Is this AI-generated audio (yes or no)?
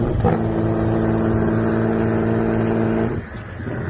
no